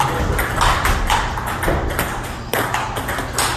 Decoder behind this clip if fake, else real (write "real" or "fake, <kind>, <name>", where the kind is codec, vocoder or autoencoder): real